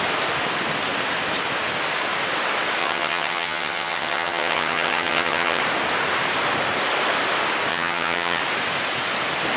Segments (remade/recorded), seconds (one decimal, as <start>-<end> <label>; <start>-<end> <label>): 0.0-2.8 recorded; 2.8-5.6 remade; 5.6-7.7 recorded; 7.7-8.4 remade; 8.4-9.6 recorded